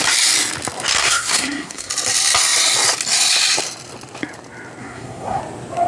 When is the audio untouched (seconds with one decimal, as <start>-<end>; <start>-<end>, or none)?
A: 0.0-1.0; 1.9-4.8; 5.4-5.9